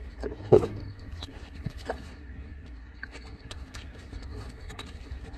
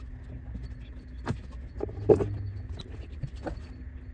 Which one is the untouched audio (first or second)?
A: second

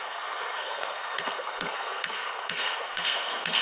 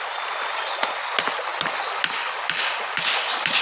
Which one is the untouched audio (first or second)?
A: second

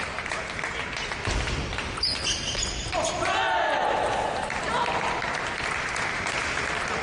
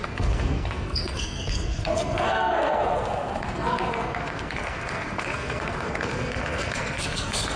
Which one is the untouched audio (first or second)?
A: first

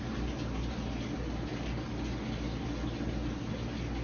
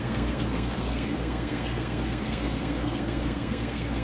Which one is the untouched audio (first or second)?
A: first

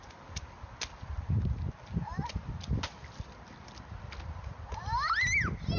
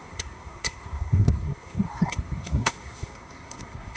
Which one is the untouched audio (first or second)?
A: first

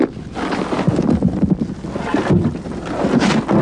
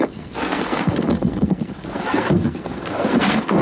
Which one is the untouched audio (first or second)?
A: first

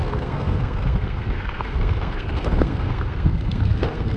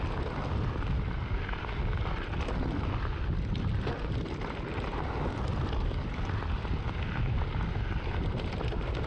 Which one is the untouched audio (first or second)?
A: second